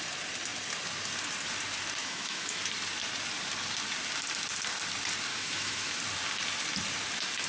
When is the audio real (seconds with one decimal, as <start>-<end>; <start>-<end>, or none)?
0.0-2.0; 2.6-5.3; 6.0-7.5